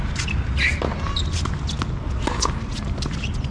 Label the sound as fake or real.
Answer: real